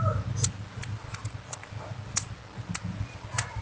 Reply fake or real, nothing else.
real